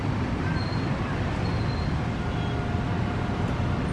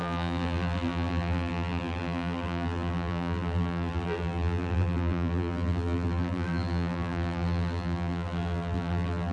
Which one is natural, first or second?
first